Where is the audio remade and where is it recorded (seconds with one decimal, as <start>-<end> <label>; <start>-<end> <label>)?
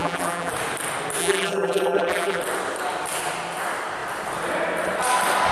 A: 0.0-0.5 remade; 0.5-1.2 recorded; 1.2-2.4 remade; 2.4-5.5 recorded